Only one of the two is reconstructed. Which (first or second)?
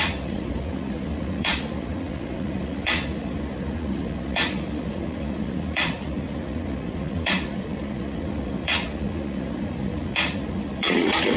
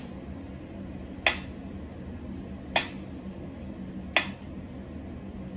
first